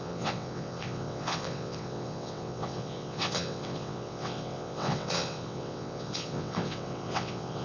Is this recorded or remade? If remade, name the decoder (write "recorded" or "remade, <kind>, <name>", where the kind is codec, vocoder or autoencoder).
remade, vocoder, WaveNeXt